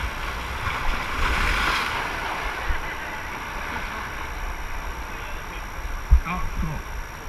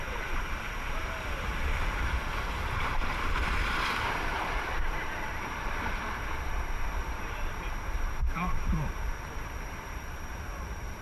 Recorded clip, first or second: first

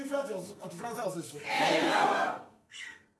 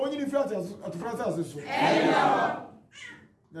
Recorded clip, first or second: second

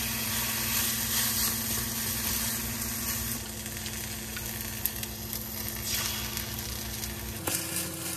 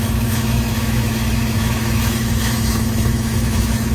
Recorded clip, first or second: first